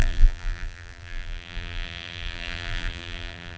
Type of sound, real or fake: fake